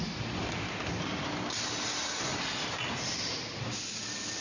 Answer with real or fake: real